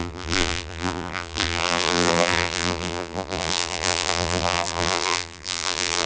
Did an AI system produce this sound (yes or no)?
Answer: yes